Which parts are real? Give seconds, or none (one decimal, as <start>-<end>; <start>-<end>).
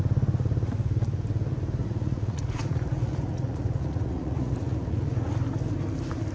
0.0-1.8; 5.3-6.3